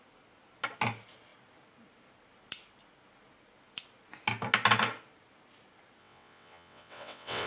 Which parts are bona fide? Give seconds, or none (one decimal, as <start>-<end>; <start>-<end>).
0.0-6.0